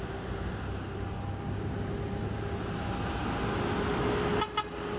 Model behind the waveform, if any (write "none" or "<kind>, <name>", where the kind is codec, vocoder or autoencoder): none